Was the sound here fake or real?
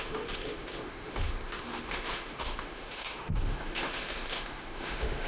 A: fake